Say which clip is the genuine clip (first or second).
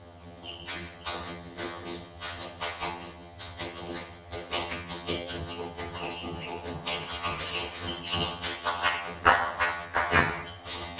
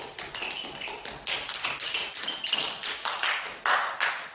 second